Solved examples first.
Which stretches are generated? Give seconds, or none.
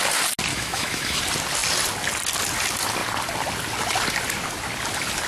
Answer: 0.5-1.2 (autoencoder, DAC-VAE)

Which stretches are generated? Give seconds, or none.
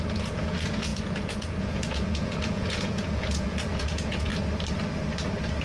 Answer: 0.0-4.3 (vocoder, Vocos)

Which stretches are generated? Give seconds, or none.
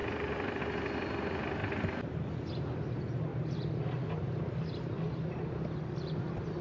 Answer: 0.0-0.6 (vocoder, BigVGAN v2)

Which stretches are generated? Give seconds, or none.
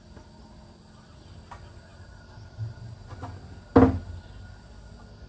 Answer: none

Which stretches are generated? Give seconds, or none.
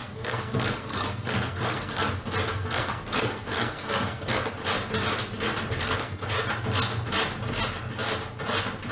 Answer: 0.0-2.1 (codec, SNAC); 2.5-4.5; 5.8-6.3